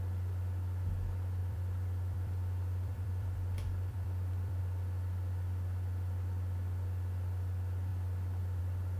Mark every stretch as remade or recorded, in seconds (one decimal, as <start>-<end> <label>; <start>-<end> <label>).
0.0-1.4 recorded; 1.4-4.6 remade; 4.6-9.0 recorded